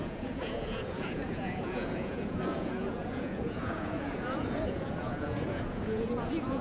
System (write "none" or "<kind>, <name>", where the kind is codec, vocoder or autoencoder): vocoder, Vocos